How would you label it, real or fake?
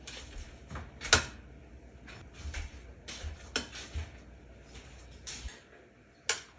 real